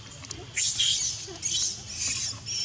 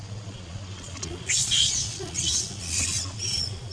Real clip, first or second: first